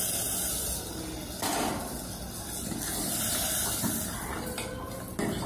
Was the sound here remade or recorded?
recorded